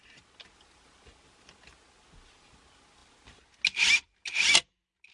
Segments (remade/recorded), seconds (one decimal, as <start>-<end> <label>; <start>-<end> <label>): 0.0-5.1 recorded